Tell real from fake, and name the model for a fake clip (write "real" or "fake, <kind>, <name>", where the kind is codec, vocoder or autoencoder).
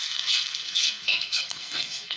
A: fake, codec, SNAC